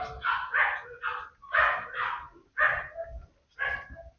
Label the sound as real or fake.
real